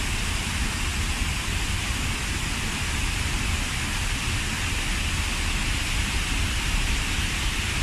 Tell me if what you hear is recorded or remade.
recorded